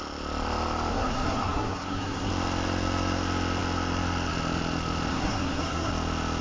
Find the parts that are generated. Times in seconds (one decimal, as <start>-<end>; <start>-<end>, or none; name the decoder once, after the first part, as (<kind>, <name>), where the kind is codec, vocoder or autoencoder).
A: 0.9-2.3 (codec, SNAC); 5.1-5.9